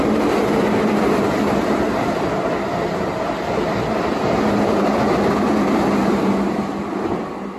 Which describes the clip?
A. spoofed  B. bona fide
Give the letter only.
B